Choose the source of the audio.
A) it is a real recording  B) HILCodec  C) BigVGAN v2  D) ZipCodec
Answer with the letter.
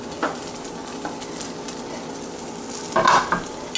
A